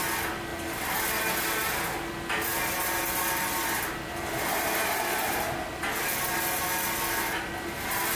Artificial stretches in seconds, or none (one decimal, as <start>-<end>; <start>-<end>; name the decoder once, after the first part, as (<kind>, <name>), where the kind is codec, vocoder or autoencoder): none